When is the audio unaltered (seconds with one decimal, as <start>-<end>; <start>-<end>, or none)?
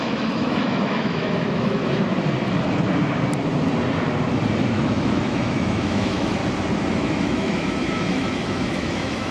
1.8-4.7; 6.4-6.9